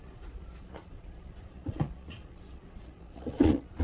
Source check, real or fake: fake